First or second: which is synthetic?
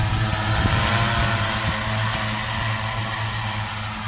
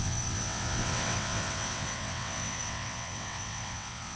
second